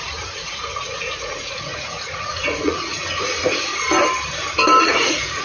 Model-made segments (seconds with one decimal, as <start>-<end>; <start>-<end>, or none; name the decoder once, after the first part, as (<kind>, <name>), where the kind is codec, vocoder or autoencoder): 0.0-3.7 (vocoder, Vocos); 4.8-5.4